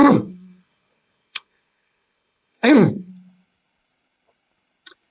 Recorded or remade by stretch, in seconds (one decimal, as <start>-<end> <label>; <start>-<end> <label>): 0.0-3.1 remade; 3.1-5.1 recorded